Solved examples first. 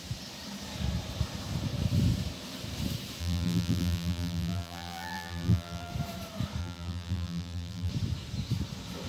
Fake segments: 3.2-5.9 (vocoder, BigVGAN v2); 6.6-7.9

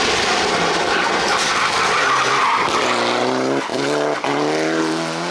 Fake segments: 1.5-2.3 (vocoder, BigVGAN v2)

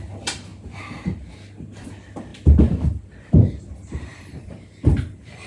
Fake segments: 4.1-5.5 (vocoder, BigVGAN v2)

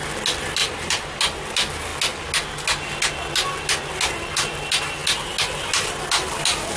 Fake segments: 0.6-1.2 (vocoder, BigVGAN v2)

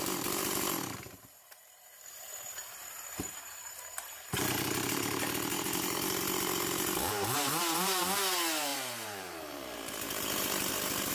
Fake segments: 0.0-11.1 (vocoder, BigVGAN v2)